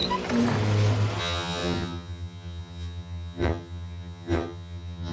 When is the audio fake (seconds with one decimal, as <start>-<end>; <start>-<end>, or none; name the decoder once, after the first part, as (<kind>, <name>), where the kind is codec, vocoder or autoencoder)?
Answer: 1.2-5.1 (vocoder, HiFi-GAN)